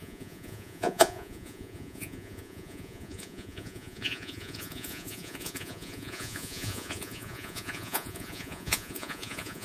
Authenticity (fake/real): fake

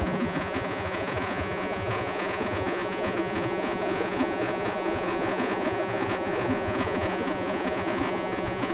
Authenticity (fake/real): fake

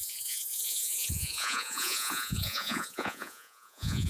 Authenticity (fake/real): fake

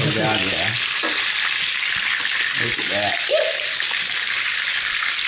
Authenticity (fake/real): real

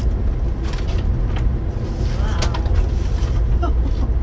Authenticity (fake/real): real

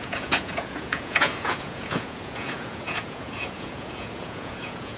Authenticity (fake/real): fake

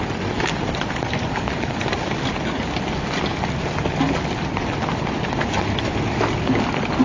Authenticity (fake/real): real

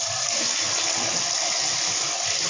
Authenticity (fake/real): real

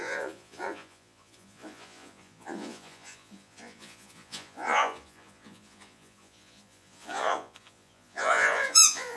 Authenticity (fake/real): fake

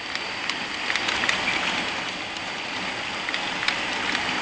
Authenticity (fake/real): real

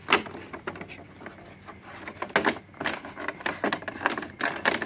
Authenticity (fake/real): real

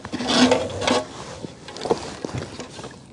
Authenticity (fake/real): real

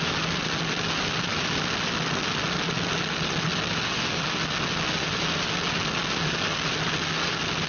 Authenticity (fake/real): real